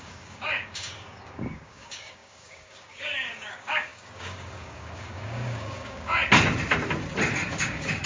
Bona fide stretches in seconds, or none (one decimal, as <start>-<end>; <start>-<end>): 6.2-7.6